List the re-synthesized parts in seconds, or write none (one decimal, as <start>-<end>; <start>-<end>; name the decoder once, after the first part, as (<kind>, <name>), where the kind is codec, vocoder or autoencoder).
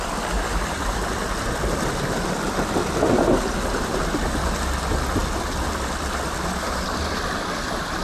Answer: 0.0-8.0 (vocoder, BigVGAN v2)